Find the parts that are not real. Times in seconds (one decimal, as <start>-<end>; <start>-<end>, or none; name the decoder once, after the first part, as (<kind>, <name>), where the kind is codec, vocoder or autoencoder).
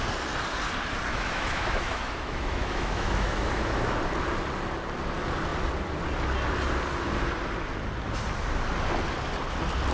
1.1-4.0 (autoencoder, DAC-VAE)